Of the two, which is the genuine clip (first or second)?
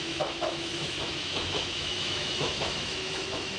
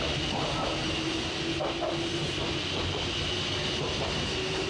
second